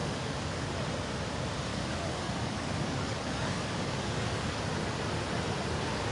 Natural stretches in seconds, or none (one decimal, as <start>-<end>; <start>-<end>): 0.7-1.7; 4.6-6.1